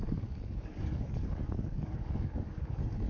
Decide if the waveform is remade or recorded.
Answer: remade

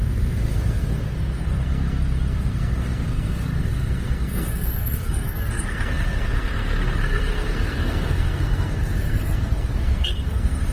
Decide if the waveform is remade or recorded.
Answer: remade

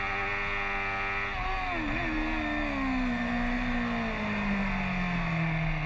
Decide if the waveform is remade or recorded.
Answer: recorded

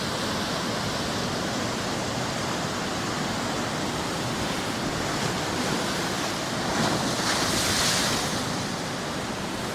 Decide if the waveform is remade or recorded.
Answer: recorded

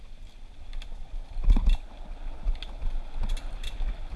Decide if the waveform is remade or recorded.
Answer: recorded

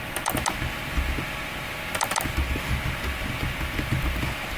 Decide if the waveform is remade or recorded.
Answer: recorded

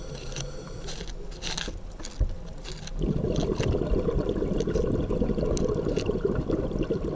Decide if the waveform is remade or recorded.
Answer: recorded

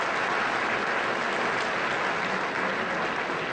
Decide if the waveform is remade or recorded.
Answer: recorded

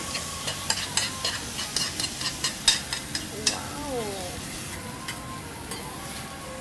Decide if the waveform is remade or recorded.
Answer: recorded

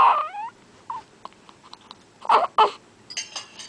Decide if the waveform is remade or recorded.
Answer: recorded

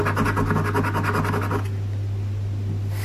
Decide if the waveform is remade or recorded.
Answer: recorded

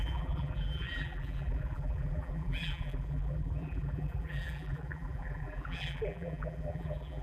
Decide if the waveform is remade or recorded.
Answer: remade